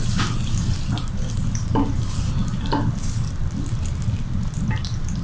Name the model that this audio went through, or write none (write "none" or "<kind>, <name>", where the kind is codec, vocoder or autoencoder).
none